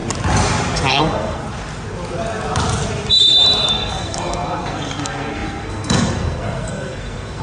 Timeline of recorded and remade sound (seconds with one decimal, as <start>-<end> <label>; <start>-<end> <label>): 0.0-0.9 recorded; 0.9-1.4 remade; 1.4-3.7 recorded; 3.7-7.4 remade